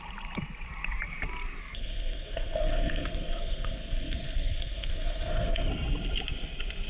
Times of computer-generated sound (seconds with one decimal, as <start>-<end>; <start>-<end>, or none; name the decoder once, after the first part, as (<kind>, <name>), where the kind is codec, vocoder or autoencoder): 1.6-5.7 (codec, SNAC)